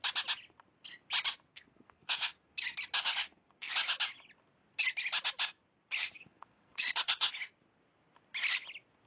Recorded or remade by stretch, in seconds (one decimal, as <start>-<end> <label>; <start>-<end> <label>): 0.0-1.5 recorded; 1.5-2.5 remade; 2.5-3.2 recorded; 3.2-3.7 remade; 3.7-6.0 recorded; 6.0-7.3 remade; 7.3-9.1 recorded